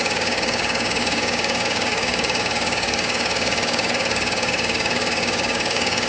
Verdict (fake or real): fake